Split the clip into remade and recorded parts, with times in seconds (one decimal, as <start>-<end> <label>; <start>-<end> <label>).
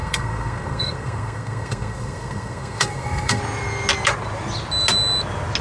0.0-3.4 remade; 3.4-5.6 recorded